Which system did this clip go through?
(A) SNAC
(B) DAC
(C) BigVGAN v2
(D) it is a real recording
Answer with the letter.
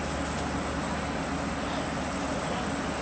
D